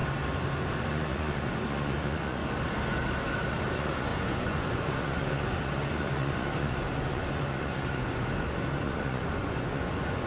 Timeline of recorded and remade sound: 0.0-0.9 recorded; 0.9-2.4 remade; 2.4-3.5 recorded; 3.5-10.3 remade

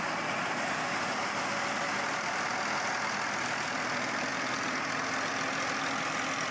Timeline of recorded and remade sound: 0.0-6.5 recorded

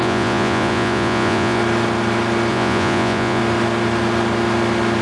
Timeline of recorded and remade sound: 0.0-1.6 remade; 1.6-2.5 recorded; 2.5-3.4 remade; 3.4-5.0 recorded

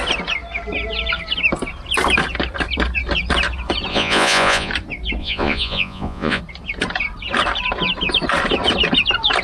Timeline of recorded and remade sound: 0.0-3.9 recorded; 3.9-4.7 remade; 4.7-5.2 recorded; 5.2-6.4 remade; 6.4-9.4 recorded